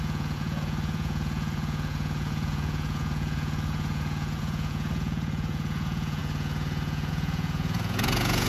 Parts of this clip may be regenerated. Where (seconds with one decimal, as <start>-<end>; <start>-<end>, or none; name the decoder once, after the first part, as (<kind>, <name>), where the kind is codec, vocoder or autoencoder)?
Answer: 0.0-8.5 (vocoder, Vocos)

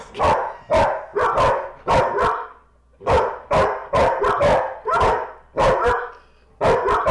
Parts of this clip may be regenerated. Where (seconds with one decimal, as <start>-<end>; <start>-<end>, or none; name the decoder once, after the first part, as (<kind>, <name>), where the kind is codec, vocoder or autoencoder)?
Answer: none

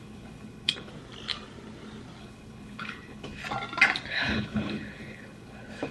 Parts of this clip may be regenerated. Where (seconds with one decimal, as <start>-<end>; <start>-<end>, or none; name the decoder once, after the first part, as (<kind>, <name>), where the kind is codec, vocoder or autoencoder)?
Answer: 0.0-0.9 (codec, HILCodec); 2.2-3.4; 4.1-5.9

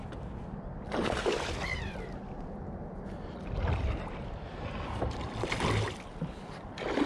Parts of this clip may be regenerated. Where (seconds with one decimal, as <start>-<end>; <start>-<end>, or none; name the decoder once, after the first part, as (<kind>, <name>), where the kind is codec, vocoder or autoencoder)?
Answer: none